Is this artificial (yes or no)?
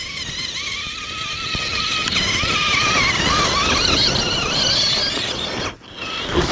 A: no